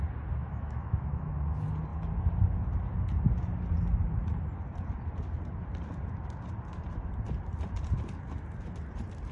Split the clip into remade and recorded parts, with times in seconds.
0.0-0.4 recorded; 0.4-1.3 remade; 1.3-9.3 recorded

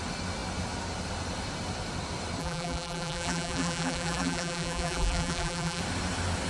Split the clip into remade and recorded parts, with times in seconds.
0.0-2.4 recorded; 2.4-5.8 remade; 5.8-6.5 recorded